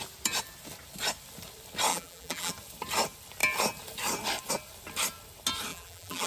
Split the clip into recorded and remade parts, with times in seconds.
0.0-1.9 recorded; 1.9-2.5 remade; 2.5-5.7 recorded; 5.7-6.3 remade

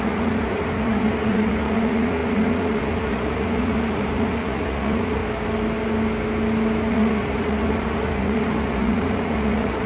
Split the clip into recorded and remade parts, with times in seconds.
0.0-5.2 remade; 5.2-6.9 recorded; 6.9-9.9 remade

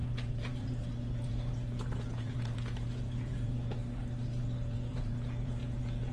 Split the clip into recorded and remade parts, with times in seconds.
0.0-3.8 remade; 3.8-4.4 recorded; 4.4-6.1 remade

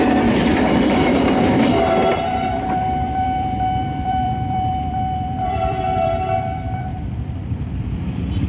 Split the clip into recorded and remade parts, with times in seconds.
0.0-8.5 remade